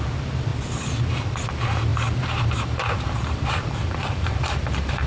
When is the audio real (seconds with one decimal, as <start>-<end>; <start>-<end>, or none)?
0.0-1.9